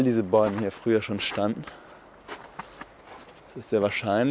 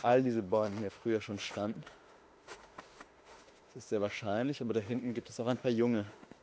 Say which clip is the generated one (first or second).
second